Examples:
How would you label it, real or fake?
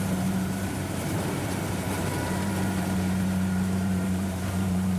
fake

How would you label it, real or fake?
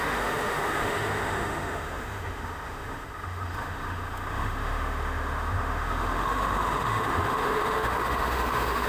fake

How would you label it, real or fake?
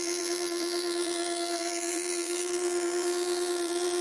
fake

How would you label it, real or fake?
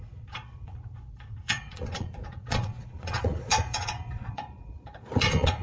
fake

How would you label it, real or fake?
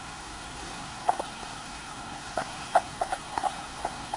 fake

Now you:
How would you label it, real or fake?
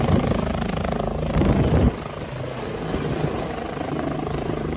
fake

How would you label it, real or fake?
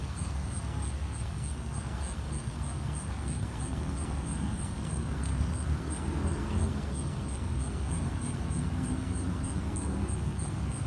fake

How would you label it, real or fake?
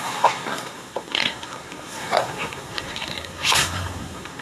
fake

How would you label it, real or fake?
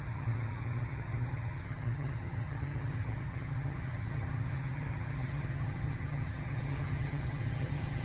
fake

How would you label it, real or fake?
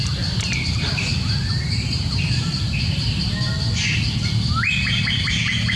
fake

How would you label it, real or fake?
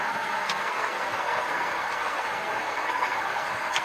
fake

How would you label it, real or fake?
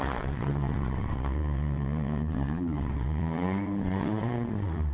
fake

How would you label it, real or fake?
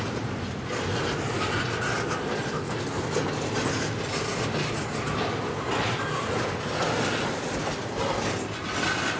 real